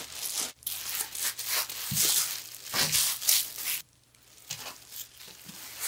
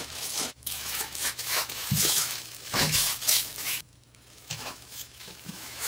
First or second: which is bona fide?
first